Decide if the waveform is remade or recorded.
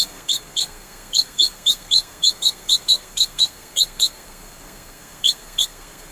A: remade